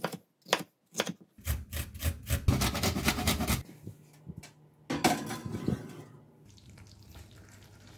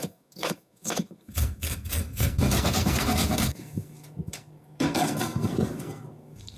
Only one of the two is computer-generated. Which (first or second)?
second